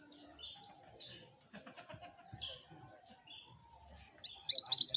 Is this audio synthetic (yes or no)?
no